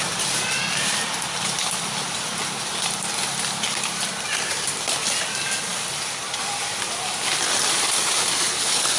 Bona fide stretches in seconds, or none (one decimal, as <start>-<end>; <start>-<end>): 0.0-9.0